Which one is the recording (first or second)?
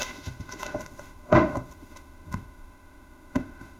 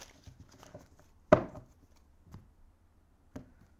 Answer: second